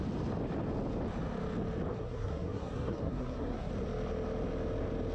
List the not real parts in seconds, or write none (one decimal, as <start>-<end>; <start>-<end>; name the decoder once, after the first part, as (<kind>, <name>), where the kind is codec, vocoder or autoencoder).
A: 1.9-3.7 (codec, SNAC)